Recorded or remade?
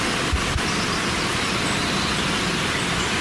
recorded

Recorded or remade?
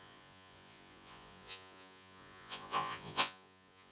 remade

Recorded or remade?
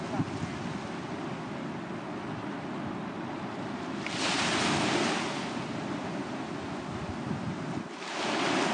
recorded